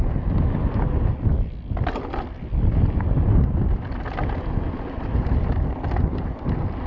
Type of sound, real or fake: real